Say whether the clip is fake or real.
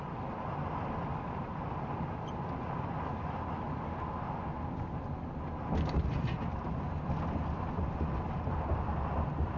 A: real